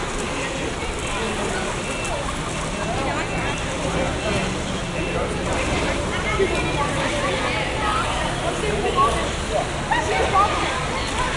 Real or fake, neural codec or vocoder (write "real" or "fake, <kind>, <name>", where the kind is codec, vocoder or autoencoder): real